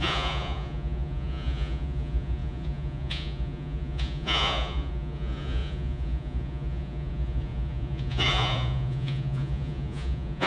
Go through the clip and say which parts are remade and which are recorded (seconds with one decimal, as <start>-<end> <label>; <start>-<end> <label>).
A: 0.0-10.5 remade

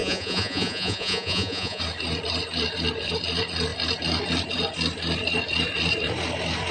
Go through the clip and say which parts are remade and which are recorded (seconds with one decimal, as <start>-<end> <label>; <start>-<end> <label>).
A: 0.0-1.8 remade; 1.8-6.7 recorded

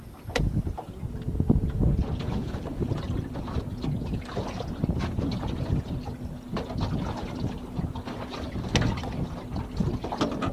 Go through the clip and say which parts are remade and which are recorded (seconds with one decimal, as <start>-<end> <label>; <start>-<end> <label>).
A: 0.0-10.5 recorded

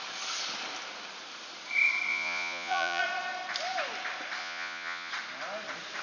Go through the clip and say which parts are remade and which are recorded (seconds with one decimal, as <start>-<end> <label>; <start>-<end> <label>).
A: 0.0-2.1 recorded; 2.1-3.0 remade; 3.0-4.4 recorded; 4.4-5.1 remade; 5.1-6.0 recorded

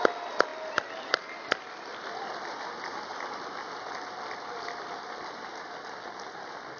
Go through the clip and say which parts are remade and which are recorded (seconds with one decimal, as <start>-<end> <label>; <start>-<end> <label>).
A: 0.0-6.8 recorded

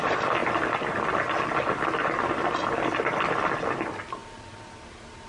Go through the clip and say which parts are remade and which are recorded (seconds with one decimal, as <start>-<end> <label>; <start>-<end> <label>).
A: 0.0-5.3 recorded